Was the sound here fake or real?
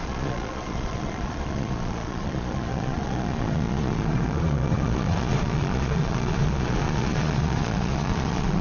fake